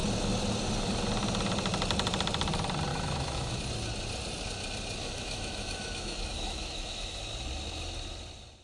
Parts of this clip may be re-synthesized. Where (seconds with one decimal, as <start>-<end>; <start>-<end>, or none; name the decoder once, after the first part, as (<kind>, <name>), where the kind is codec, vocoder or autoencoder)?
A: 2.9-3.6 (autoencoder, DAC-VAE); 5.0-7.2